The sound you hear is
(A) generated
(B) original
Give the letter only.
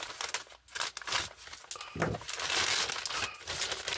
B